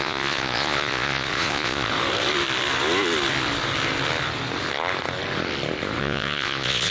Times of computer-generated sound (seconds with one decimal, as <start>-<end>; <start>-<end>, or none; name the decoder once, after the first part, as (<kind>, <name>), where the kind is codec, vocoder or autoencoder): 0.0-1.9 (vocoder, Vocos); 6.0-6.9

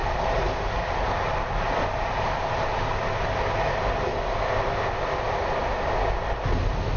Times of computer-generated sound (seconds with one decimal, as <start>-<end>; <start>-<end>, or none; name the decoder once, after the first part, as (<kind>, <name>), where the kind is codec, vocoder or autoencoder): none

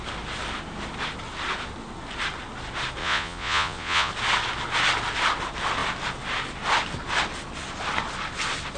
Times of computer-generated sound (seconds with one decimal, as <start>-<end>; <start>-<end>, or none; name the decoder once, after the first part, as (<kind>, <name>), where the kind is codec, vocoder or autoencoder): 3.0-4.1 (vocoder, Vocos)

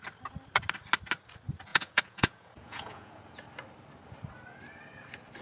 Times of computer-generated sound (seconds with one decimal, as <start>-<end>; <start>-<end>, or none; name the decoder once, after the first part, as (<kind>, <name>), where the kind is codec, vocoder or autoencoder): 1.7-3.2 (vocoder, Vocos)

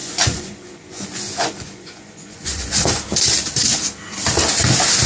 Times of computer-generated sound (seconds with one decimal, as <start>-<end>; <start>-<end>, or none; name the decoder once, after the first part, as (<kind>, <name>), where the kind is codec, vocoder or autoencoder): 0.0-3.0 (vocoder, Vocos)

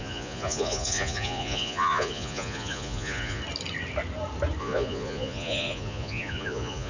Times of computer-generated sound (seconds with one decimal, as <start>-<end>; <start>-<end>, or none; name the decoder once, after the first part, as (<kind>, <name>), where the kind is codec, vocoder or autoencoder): 0.0-3.4 (vocoder, Vocos); 4.6-6.9

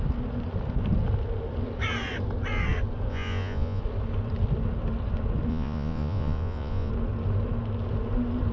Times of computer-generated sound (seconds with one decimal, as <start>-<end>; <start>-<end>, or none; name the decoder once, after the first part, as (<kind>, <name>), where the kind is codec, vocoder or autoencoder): 3.1-3.8 (vocoder, Vocos); 5.5-6.9

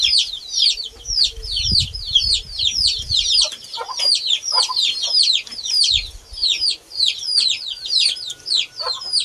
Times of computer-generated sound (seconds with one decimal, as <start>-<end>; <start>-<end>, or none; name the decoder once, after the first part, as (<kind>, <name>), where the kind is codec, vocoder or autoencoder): none